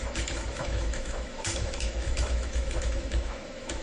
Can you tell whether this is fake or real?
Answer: fake